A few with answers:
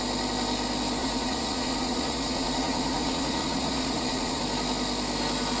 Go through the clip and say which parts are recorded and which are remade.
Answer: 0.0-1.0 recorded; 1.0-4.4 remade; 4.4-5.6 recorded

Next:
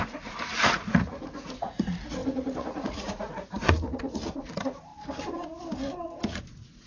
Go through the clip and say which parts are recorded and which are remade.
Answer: 0.0-4.9 remade; 4.9-6.2 recorded; 6.2-6.9 remade